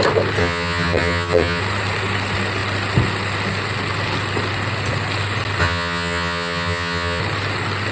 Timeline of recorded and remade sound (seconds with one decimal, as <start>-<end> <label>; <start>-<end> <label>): 0.0-0.4 recorded; 0.4-1.6 remade; 1.6-5.6 recorded; 5.6-7.2 remade; 7.2-7.9 recorded